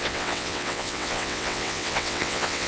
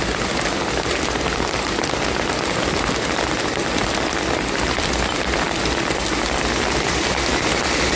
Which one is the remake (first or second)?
first